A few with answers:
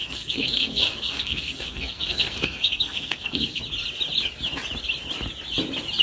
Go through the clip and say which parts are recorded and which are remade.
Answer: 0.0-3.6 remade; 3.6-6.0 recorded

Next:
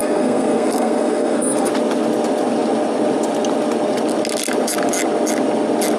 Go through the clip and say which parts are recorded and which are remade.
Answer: 0.0-1.7 remade; 1.7-6.0 recorded

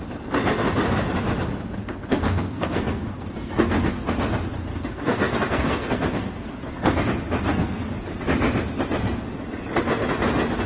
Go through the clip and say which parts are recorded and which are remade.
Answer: 0.0-1.8 recorded; 1.8-3.9 remade; 3.9-4.7 recorded; 4.7-7.0 remade; 7.0-7.4 recorded; 7.4-7.9 remade; 7.9-10.7 recorded

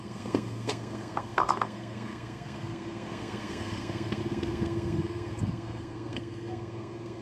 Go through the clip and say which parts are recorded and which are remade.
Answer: 0.0-7.2 remade

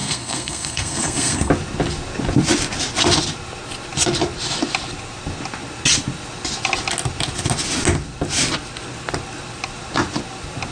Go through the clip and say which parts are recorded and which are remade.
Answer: 0.0-1.5 remade; 1.5-10.7 recorded

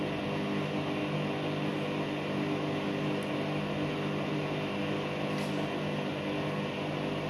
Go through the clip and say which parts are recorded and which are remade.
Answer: 0.0-7.3 recorded

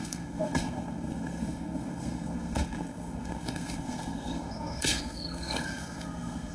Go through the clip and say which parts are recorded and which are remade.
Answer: 0.0-6.5 remade

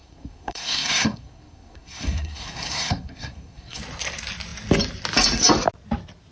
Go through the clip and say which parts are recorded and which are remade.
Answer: 0.0-3.8 remade; 3.8-6.3 recorded